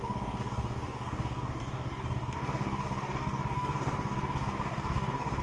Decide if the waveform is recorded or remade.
remade